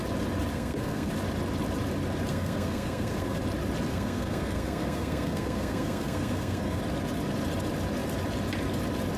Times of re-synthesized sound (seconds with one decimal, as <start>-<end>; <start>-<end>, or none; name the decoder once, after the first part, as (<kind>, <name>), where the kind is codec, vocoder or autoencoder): 0.5-1.1 (codec, SNAC); 2.3-3.4; 3.9-6.8